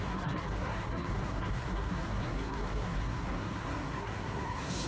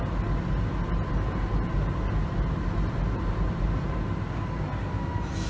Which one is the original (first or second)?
second